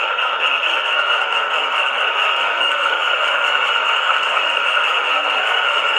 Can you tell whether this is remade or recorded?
remade